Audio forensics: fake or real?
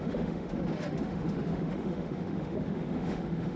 fake